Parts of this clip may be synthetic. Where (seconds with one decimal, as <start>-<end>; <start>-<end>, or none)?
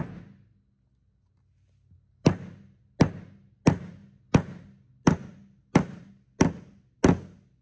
none